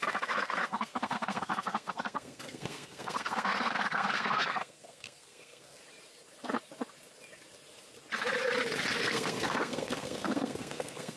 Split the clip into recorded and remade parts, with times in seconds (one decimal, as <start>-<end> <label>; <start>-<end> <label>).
0.0-5.8 remade; 5.8-9.0 recorded; 9.0-11.2 remade

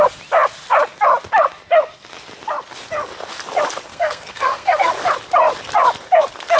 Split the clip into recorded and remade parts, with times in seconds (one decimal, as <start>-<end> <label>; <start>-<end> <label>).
0.0-3.9 recorded; 3.9-4.9 remade; 4.9-6.6 recorded

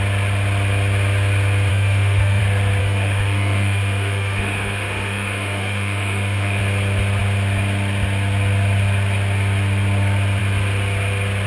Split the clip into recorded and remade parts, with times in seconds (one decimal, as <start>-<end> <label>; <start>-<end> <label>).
0.0-1.7 recorded; 1.7-2.4 remade; 2.4-2.8 recorded; 2.8-6.6 remade; 6.6-11.5 recorded